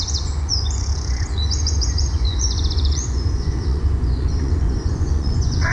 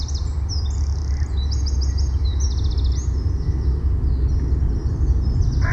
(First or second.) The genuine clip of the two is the second